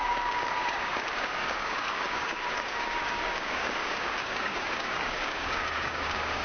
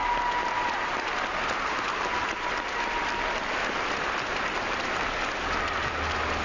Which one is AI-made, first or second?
first